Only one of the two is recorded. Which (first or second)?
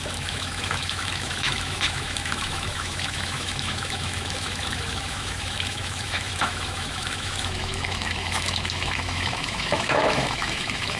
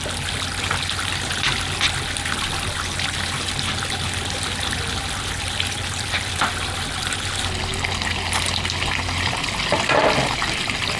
second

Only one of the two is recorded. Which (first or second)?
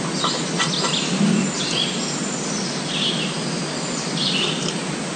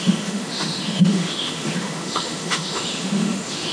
first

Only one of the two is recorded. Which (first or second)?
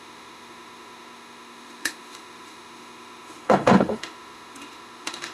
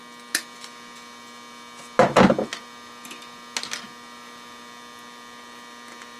second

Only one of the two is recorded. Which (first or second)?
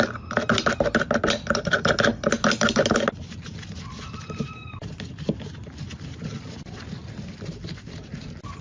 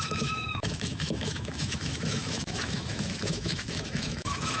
first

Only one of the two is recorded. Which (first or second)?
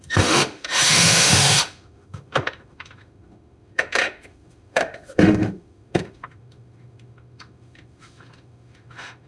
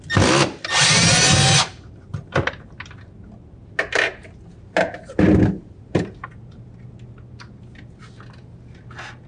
second